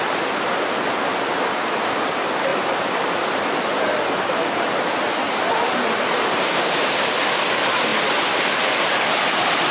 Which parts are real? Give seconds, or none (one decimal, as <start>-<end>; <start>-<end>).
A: 0.0-9.7